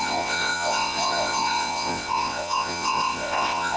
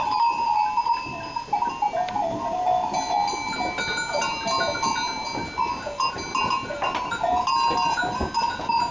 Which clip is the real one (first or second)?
second